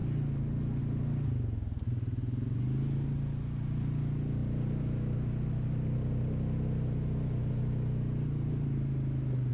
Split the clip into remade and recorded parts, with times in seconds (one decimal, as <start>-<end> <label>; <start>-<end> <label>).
0.0-9.5 recorded